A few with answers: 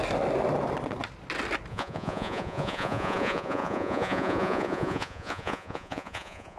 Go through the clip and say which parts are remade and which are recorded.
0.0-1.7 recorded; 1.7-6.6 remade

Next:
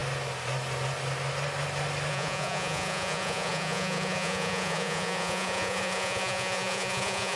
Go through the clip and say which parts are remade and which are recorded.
0.0-2.1 recorded; 2.1-7.4 remade